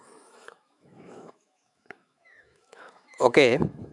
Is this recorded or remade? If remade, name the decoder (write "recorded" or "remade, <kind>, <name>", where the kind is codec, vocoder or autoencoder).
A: remade, autoencoder, DAC-VAE